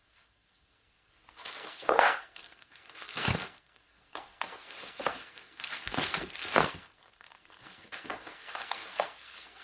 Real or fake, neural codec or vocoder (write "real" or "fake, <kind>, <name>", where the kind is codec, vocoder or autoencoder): fake, codec, SNAC